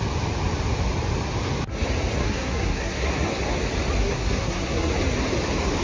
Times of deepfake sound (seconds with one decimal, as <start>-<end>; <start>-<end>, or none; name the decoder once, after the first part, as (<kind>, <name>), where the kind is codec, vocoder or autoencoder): 2.2-3.4 (codec, SNAC); 4.0-4.9